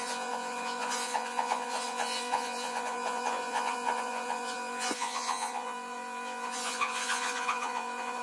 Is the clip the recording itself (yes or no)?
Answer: no